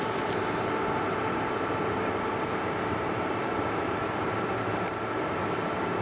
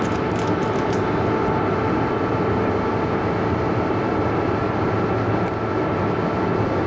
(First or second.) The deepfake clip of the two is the first